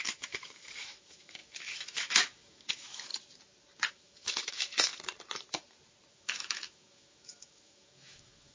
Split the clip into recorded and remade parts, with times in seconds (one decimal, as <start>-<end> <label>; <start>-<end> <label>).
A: 0.0-3.1 remade; 3.1-3.9 recorded; 3.9-4.9 remade; 4.9-6.1 recorded; 6.1-8.5 remade